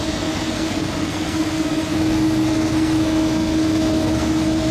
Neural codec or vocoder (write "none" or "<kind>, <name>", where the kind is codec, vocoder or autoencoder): codec, SNAC